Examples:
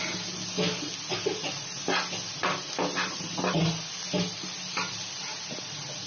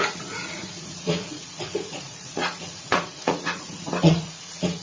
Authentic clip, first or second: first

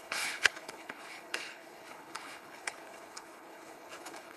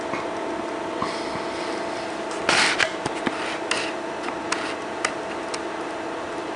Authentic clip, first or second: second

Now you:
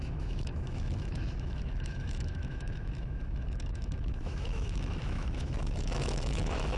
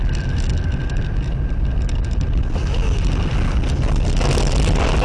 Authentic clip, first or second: second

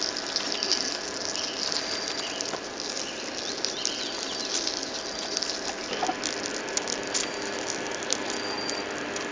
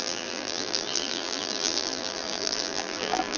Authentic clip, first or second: first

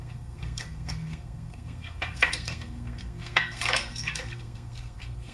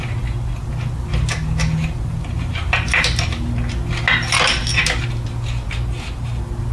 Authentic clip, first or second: second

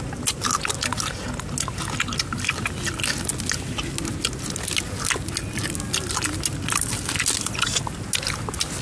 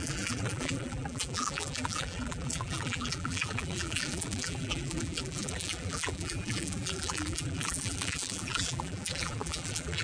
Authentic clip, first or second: first